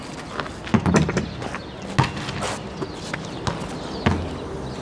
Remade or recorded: recorded